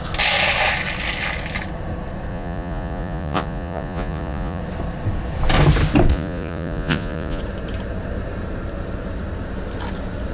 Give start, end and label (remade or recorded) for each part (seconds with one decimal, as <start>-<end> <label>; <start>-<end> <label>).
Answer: 0.0-2.3 recorded; 2.3-4.6 remade; 4.6-6.1 recorded; 6.1-7.4 remade; 7.4-10.3 recorded